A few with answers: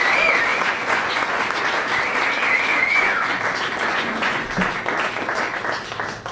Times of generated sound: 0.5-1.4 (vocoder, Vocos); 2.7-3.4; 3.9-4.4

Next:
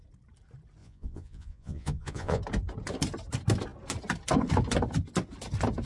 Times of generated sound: 0.8-2.4 (vocoder, Vocos)

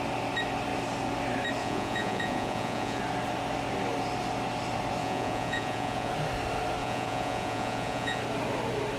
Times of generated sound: 1.6-3.0 (vocoder, Vocos); 5.0-6.1; 6.8-8.2

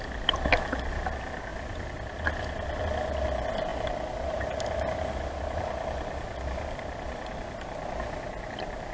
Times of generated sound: none

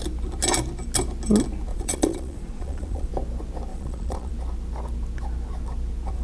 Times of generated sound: 1.7-3.1 (vocoder, Vocos); 3.7-4.3

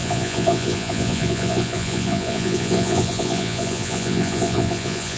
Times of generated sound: 0.0-5.2 (vocoder, Vocos)